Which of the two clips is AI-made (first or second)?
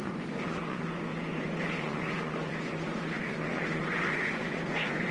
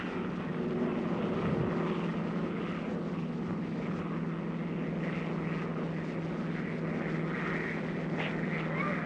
first